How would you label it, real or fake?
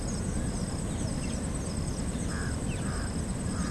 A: real